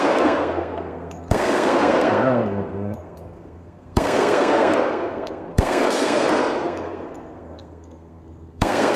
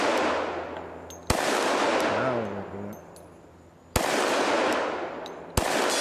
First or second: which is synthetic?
first